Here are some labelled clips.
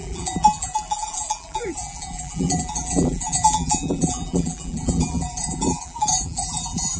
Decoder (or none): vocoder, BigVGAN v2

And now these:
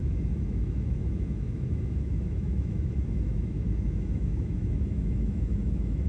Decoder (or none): autoencoder, DAC-VAE